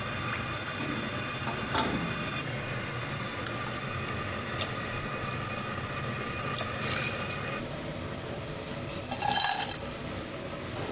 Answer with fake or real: real